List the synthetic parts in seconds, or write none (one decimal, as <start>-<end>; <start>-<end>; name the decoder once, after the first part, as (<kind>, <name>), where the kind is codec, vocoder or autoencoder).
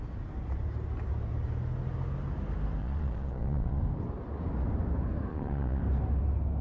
2.8-3.8 (vocoder, Vocos); 5.3-5.8